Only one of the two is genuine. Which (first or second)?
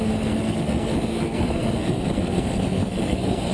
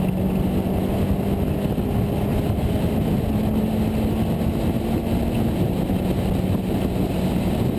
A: second